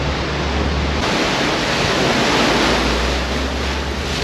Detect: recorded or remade recorded